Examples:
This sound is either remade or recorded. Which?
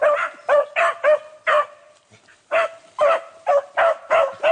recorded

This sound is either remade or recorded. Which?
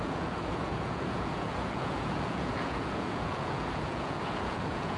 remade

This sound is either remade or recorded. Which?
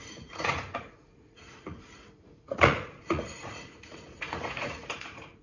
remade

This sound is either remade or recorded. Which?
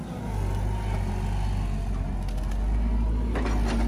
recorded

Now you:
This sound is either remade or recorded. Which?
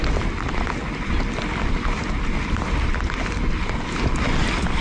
recorded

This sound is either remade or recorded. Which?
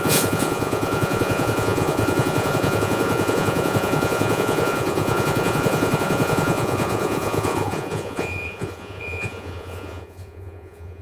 remade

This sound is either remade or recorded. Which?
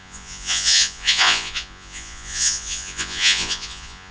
remade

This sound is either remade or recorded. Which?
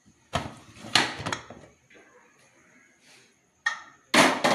recorded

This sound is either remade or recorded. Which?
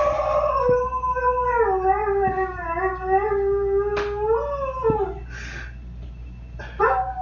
recorded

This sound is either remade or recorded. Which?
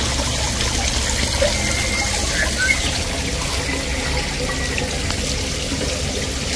recorded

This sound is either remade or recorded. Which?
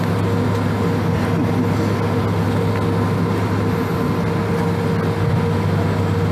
recorded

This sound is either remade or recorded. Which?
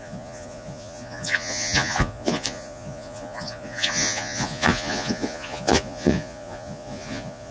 remade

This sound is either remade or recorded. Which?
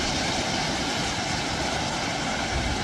recorded